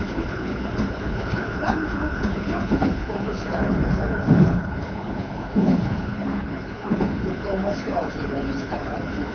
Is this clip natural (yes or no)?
no